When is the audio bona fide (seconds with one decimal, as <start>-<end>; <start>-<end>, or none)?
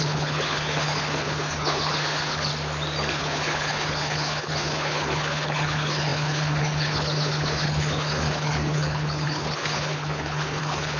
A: 2.5-3.1